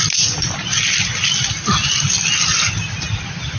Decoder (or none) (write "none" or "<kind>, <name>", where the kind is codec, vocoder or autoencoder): none